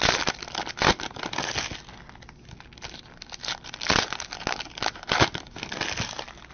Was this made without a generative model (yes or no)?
yes